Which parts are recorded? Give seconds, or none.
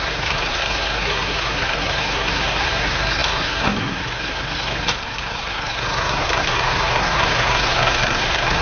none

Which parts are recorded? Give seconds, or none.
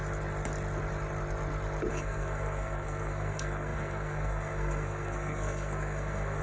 0.0-1.9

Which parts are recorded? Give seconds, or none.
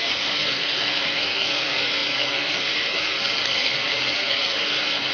none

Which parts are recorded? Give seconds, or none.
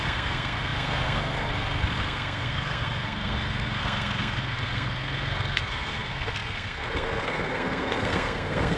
none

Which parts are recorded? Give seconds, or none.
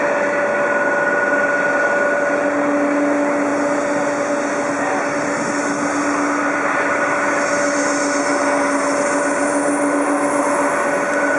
0.0-11.4